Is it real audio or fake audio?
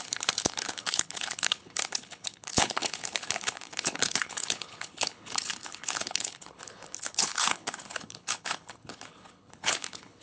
fake